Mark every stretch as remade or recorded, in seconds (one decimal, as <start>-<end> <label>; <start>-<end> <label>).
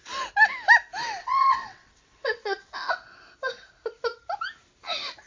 0.0-1.2 recorded; 1.2-2.7 remade; 2.7-5.3 recorded